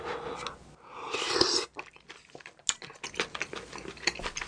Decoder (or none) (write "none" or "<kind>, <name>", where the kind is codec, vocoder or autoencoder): none